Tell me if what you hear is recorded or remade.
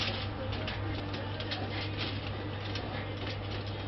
recorded